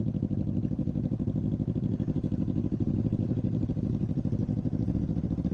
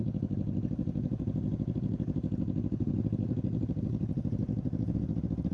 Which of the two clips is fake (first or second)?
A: second